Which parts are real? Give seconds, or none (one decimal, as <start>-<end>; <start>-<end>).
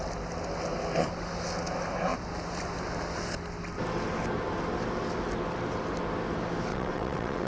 0.0-6.7